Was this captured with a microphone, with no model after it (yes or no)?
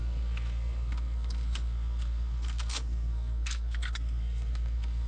no